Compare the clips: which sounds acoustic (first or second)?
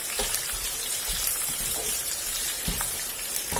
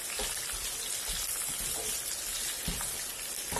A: second